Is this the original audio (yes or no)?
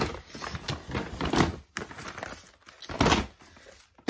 yes